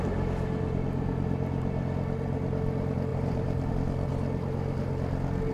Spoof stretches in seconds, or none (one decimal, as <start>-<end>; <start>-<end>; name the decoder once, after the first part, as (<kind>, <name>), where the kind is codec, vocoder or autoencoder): 3.1-3.7 (vocoder, BigVGAN v2)